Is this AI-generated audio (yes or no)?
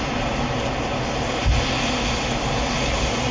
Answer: no